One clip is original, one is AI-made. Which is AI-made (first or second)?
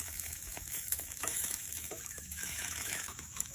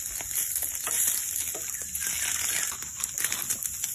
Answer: first